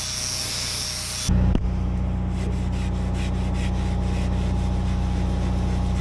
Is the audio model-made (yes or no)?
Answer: no